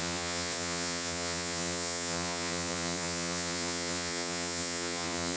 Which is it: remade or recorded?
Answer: remade